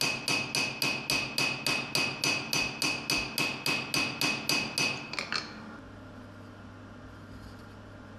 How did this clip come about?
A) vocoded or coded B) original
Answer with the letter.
B